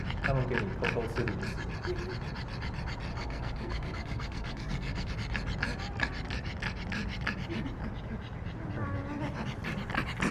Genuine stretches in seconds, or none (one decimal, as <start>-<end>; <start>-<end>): 0.0-3.1; 5.1-10.3